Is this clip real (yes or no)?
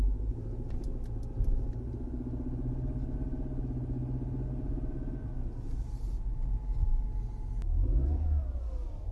yes